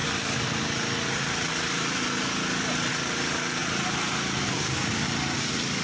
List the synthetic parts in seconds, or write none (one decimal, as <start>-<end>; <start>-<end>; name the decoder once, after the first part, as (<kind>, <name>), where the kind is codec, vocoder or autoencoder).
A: 3.6-4.9 (vocoder, BigVGAN v2)